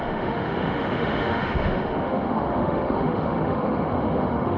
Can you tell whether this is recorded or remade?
remade